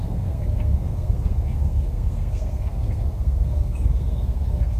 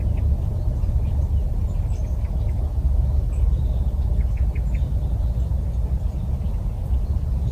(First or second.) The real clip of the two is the second